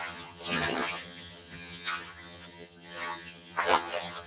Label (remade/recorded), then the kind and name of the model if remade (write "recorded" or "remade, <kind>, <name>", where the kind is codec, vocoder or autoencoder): remade, vocoder, HiFi-GAN